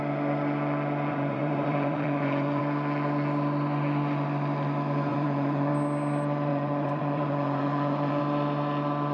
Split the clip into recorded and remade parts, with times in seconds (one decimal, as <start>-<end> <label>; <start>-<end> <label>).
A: 0.0-1.1 recorded; 1.1-2.6 remade; 2.6-5.1 recorded; 5.1-5.7 remade; 5.7-6.5 recorded; 6.5-8.2 remade; 8.2-9.1 recorded